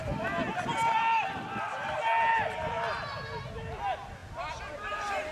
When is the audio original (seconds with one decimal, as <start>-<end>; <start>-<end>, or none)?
0.0-5.3

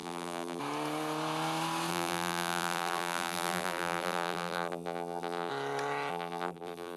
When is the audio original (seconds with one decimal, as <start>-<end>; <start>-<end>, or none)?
0.6-1.9; 5.5-6.1

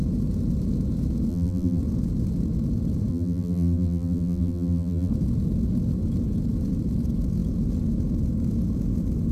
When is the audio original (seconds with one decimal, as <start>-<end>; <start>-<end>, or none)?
0.0-1.3; 1.8-3.1; 5.1-9.3

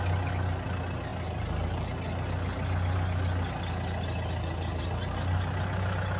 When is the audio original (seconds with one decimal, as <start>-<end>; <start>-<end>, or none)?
0.0-6.2

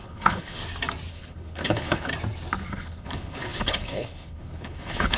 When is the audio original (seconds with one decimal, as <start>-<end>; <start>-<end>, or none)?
0.6-1.1; 2.1-2.7